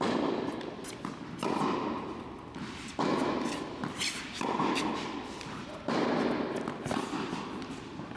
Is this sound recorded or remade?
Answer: recorded